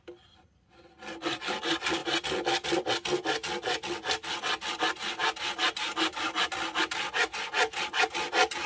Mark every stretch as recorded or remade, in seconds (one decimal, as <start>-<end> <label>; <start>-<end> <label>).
0.0-8.7 recorded